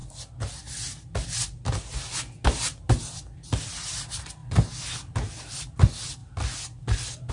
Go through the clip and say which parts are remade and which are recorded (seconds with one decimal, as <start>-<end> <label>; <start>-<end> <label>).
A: 0.0-7.3 recorded